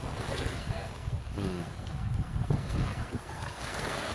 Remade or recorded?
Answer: remade